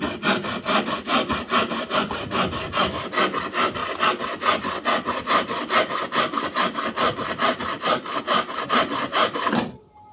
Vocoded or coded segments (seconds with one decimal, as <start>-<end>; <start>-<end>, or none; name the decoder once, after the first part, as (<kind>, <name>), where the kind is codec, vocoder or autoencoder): none